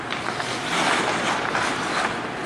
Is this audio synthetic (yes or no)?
no